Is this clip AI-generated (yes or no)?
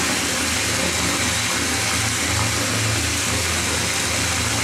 no